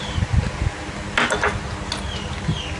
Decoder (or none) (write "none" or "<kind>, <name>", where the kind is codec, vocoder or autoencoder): none